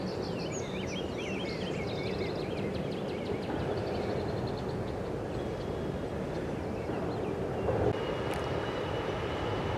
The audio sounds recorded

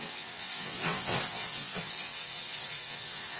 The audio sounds remade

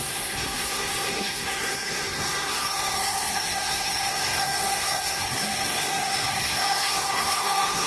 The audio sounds remade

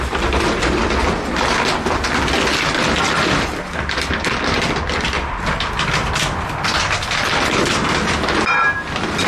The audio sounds recorded